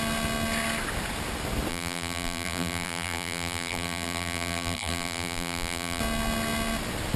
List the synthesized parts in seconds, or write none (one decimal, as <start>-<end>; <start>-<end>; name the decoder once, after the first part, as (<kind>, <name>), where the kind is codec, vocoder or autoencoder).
1.7-6.0 (vocoder, BigVGAN v2)